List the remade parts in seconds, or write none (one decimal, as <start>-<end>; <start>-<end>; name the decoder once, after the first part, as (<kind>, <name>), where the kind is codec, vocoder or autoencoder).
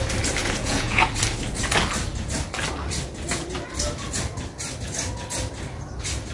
0.4-1.1 (vocoder, Vocos)